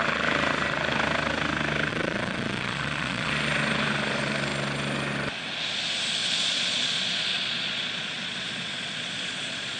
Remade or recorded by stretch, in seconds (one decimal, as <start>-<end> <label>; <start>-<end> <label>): 0.0-1.9 recorded; 1.9-3.3 remade; 3.3-6.2 recorded; 6.2-9.8 remade